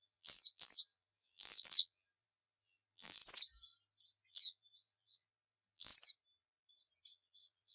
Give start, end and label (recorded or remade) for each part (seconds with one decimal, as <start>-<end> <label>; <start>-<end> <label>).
0.0-3.2 remade; 3.2-4.3 recorded; 4.3-5.9 remade; 5.9-7.1 recorded; 7.1-7.7 remade